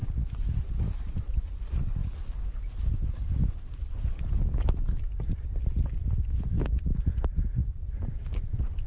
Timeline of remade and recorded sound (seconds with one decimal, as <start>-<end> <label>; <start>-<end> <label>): 0.0-2.0 remade; 2.0-7.1 recorded; 7.1-8.9 remade